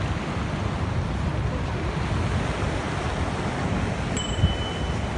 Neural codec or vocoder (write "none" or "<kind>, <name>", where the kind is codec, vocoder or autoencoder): none